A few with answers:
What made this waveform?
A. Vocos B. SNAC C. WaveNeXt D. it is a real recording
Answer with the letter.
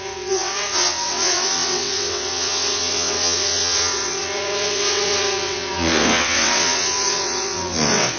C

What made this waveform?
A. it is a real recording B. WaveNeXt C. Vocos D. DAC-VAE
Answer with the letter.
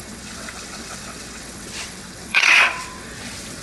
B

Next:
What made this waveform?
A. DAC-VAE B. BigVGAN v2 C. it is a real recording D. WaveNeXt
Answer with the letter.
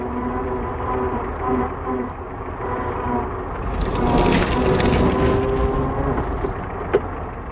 C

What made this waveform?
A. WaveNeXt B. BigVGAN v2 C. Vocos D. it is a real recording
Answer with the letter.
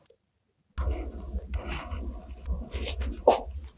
D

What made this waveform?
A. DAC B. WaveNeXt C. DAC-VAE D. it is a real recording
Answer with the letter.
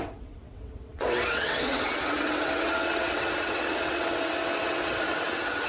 B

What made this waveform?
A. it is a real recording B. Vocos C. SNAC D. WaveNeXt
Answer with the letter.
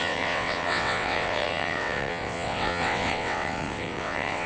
D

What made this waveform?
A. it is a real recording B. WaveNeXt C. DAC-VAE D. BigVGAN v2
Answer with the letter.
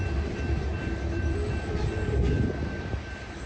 A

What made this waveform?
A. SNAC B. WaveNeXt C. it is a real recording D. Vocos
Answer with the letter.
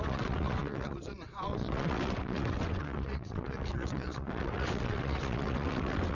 B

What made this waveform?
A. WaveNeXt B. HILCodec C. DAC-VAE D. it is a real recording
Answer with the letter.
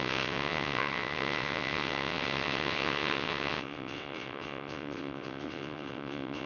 A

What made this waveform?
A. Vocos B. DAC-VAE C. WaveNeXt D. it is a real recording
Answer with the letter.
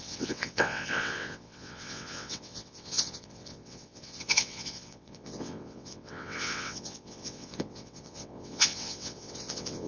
C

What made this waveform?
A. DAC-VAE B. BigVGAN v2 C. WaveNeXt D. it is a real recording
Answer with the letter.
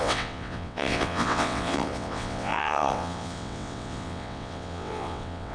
C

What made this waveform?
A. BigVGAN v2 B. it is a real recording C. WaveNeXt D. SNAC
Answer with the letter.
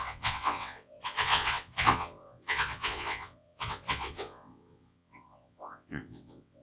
C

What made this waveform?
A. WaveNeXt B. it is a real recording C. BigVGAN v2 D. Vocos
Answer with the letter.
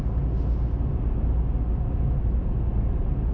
B